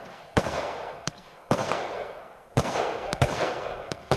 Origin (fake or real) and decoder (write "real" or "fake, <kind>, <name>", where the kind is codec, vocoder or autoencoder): fake, codec, SNAC